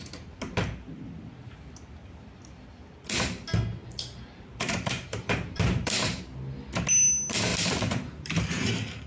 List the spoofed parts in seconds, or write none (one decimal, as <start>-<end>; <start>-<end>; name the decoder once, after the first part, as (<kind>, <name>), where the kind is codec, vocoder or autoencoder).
3.8-6.2 (vocoder, BigVGAN v2); 7.5-9.1